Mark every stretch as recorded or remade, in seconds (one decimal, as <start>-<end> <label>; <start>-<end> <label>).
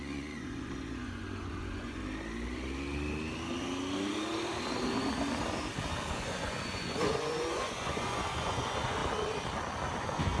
0.0-2.0 remade; 2.0-6.1 recorded; 6.1-9.0 remade; 9.0-10.0 recorded; 10.0-10.4 remade